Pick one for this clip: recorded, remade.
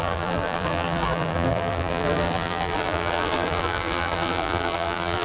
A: remade